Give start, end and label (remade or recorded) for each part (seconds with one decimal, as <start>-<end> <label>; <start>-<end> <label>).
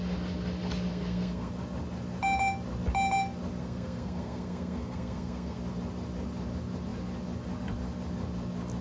0.0-0.9 recorded; 0.9-1.5 remade; 1.5-3.6 recorded; 3.6-5.6 remade; 5.6-8.8 recorded